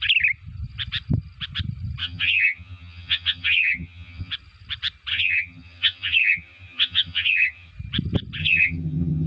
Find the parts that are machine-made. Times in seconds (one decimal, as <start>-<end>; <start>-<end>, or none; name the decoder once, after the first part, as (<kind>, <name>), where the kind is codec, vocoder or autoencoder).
2.0-4.3 (vocoder, HiFi-GAN); 5.1-7.7; 8.4-9.3